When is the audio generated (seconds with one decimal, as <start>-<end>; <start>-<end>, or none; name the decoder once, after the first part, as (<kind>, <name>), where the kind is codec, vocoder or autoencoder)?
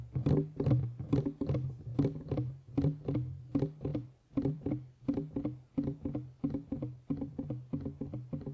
3.9-4.7 (vocoder, BigVGAN v2)